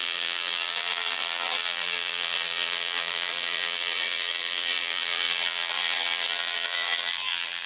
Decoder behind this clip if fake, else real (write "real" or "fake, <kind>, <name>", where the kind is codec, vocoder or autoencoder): fake, vocoder, BigVGAN v2